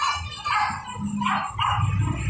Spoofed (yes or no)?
no